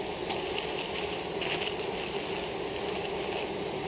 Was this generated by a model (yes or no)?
no